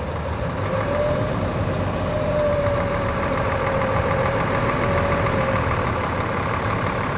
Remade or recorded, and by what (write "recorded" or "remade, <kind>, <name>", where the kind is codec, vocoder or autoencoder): remade, vocoder, BigVGAN v2